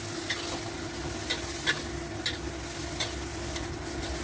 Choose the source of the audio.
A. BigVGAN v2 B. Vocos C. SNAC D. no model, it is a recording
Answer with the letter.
D